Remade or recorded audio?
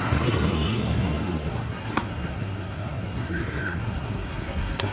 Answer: remade